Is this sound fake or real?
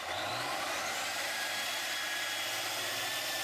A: fake